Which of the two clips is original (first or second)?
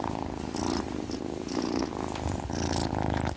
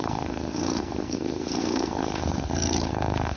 first